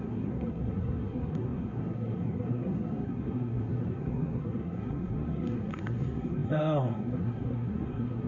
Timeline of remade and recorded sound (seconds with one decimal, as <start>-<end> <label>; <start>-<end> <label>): 0.0-8.3 remade

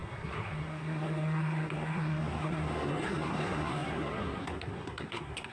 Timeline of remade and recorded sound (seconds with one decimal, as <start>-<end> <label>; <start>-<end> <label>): 0.0-5.5 remade

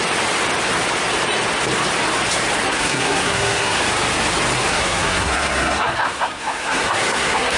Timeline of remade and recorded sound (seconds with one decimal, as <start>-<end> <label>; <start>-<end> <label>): 0.0-2.7 recorded; 2.7-3.8 remade; 3.8-4.7 recorded; 4.7-7.6 remade

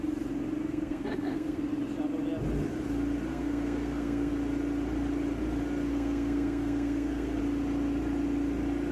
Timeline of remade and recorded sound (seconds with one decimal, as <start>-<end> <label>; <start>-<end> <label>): 0.0-0.6 recorded; 0.6-1.6 remade; 1.6-3.3 recorded; 3.3-4.3 remade; 4.3-5.9 recorded; 5.9-7.4 remade; 7.4-8.9 recorded

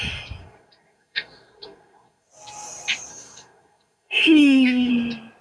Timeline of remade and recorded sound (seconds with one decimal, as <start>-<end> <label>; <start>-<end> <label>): 0.0-0.4 recorded; 0.4-2.3 remade; 2.3-3.1 recorded; 3.1-4.9 remade; 4.9-5.4 recorded

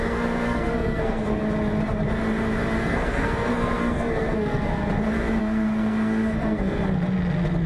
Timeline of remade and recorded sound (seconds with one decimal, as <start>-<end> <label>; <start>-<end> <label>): 0.0-1.4 remade; 1.4-2.8 recorded; 2.8-4.8 remade; 4.8-5.4 recorded; 5.4-6.8 remade; 6.8-7.7 recorded

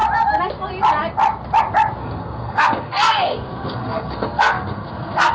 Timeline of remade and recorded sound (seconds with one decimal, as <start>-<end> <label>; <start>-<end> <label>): 0.0-2.0 recorded; 2.0-5.3 remade

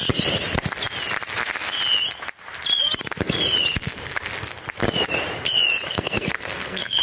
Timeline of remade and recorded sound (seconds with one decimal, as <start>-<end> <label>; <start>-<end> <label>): 0.0-5.9 recorded; 5.9-7.0 remade